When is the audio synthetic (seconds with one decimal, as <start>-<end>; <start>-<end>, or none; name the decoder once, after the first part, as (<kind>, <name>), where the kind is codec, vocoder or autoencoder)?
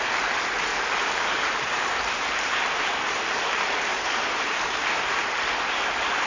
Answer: 0.7-3.2 (vocoder, BigVGAN v2); 3.9-6.3